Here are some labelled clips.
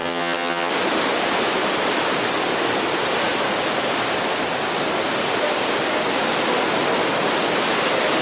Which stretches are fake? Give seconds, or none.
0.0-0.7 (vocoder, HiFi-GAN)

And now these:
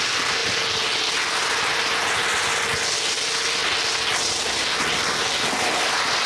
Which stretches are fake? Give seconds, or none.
none

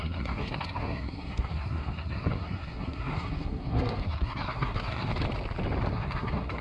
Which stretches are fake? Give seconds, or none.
0.0-5.1 (codec, SNAC); 5.9-6.6

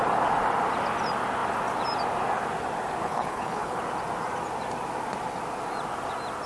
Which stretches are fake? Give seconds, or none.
3.0-3.8 (codec, HILCodec)

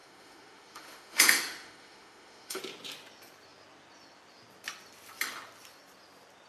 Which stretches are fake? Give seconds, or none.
0.0-2.6 (autoencoder, DAC-VAE)